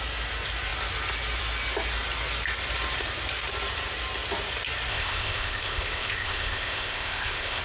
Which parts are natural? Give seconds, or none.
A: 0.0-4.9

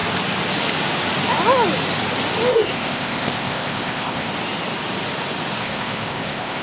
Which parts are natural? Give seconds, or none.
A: 0.0-2.5; 4.3-5.6

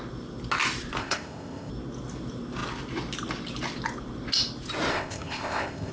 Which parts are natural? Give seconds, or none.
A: 0.0-1.0; 1.7-4.9